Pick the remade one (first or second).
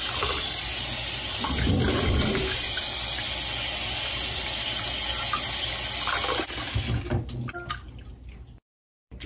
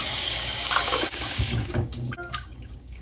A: second